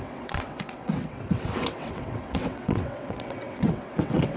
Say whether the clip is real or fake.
fake